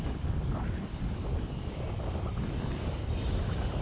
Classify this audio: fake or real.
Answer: real